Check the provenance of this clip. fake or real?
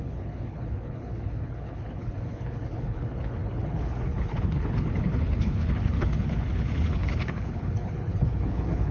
fake